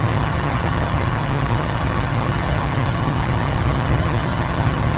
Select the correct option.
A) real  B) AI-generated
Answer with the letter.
B